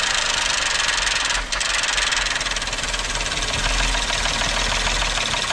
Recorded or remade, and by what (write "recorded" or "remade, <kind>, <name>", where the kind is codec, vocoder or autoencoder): recorded